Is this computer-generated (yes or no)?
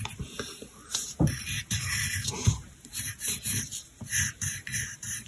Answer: yes